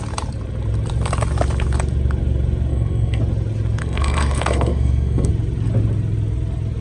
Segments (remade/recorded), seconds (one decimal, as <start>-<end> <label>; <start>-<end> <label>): 0.0-2.7 recorded; 2.7-3.2 remade; 3.2-3.8 recorded; 3.8-5.3 remade; 5.3-6.8 recorded